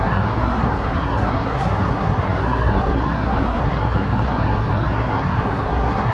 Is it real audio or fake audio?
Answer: fake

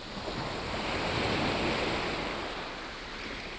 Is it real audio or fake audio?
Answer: real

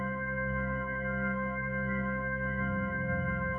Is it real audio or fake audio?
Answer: fake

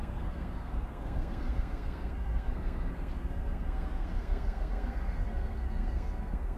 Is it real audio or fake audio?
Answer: fake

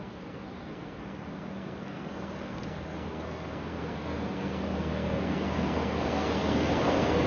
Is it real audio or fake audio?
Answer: fake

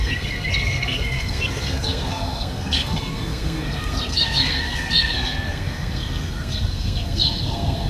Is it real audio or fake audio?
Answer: fake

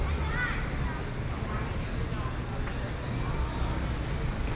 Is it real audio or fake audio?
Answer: real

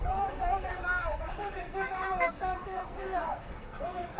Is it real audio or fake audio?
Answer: fake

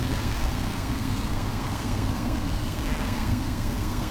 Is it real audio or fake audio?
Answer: fake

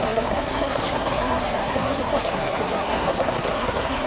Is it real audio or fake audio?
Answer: fake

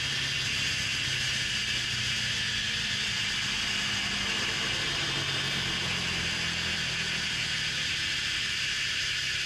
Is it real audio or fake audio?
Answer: real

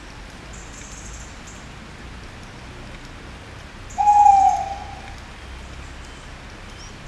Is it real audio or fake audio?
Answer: real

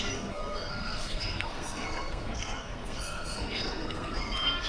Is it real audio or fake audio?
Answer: fake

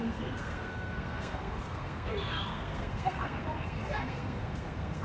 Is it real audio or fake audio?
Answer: fake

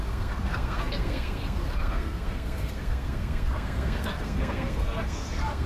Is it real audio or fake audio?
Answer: fake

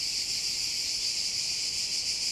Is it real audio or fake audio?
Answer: real